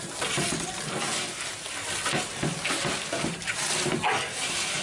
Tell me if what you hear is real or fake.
real